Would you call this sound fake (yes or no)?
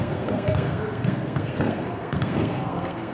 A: yes